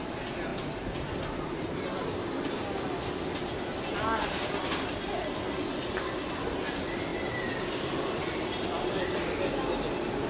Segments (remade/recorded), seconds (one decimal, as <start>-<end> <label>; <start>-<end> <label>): 0.0-10.3 recorded